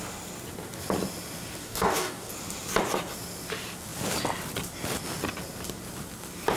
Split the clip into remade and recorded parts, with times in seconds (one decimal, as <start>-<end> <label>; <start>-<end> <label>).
0.0-1.6 recorded; 1.6-2.3 remade; 2.3-6.6 recorded

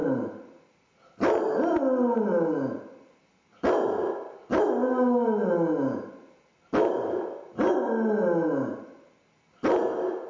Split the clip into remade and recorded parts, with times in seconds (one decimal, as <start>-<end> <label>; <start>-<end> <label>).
0.0-10.3 recorded

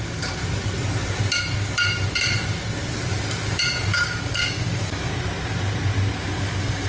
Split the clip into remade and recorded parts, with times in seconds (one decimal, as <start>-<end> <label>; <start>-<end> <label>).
0.0-0.4 remade; 0.4-3.9 recorded; 3.9-5.1 remade; 5.1-6.2 recorded; 6.2-6.9 remade

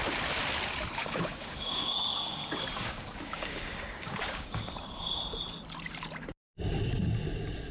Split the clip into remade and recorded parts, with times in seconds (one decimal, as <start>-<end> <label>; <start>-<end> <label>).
0.0-1.0 recorded; 1.0-4.7 remade; 4.7-7.7 recorded

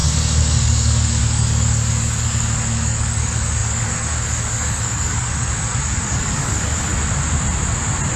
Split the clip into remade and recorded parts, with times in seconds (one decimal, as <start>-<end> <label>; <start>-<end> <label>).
0.0-6.9 remade; 6.9-8.2 recorded

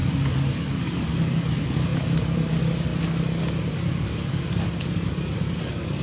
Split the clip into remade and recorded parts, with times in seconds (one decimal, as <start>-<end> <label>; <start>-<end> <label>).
0.0-6.0 remade

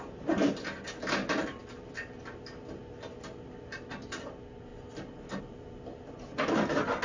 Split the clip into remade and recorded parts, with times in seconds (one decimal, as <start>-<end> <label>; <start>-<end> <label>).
0.0-7.0 recorded